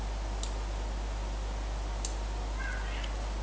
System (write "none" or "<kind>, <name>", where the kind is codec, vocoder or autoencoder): none